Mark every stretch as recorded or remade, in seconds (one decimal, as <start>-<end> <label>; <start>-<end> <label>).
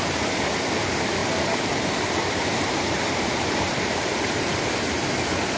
0.0-1.2 recorded; 1.2-4.6 remade; 4.6-5.6 recorded